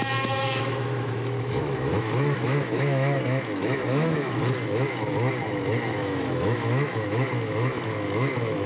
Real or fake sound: fake